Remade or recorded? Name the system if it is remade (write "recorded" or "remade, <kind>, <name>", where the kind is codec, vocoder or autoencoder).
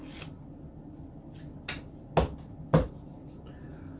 recorded